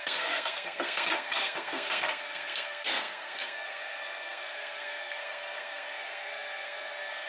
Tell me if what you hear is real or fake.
fake